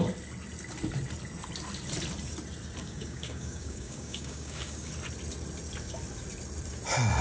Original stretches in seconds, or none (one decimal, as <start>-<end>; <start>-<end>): 0.0-2.8; 4.9-7.2